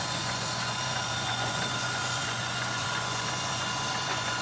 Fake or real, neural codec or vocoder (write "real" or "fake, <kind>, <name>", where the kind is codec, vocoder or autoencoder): fake, vocoder, Vocos